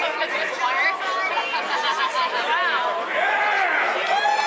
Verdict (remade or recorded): recorded